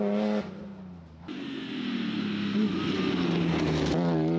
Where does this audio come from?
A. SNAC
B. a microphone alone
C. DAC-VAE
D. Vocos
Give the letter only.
B